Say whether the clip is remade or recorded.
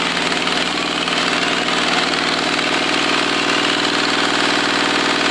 recorded